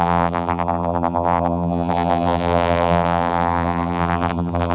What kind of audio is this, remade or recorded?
remade